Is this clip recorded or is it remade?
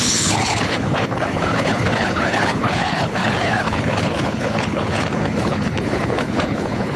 remade